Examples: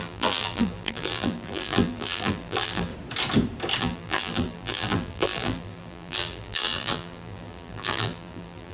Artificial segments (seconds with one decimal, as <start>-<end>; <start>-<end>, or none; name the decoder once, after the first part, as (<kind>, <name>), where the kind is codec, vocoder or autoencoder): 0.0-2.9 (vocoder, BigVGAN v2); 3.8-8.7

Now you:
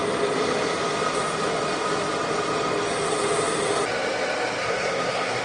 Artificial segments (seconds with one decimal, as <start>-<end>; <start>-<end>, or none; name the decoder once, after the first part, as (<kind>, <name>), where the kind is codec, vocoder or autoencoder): 4.6-5.4 (codec, SNAC)

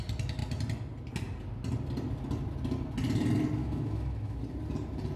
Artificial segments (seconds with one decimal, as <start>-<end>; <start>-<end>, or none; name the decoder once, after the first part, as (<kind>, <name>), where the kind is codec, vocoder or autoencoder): 3.6-4.4 (autoencoder, DAC-VAE)